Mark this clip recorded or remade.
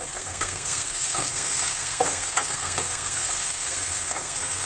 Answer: remade